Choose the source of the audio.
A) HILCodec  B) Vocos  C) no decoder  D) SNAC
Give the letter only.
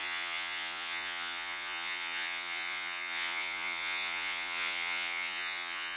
B